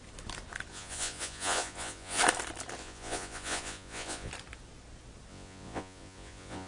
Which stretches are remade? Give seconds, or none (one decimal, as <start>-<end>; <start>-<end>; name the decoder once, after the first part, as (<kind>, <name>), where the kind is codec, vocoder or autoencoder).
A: 0.7-2.2 (vocoder, Vocos); 2.8-4.3; 5.3-6.7